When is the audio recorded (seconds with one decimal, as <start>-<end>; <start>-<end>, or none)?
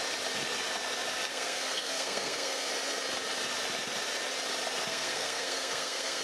0.0-1.3; 2.7-4.9